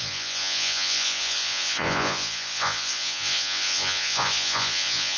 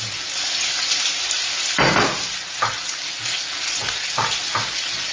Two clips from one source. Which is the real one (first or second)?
second